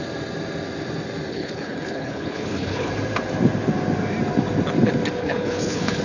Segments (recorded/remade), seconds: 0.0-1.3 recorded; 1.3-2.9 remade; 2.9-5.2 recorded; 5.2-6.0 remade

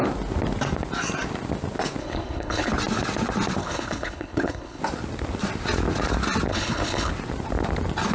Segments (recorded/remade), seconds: 0.0-2.0 recorded; 2.0-2.7 remade; 2.7-3.6 recorded; 3.6-4.8 remade; 4.8-6.5 recorded; 6.5-7.1 remade; 7.1-8.1 recorded